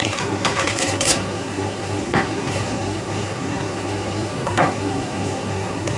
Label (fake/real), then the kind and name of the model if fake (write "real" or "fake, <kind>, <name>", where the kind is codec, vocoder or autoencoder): fake, codec, SNAC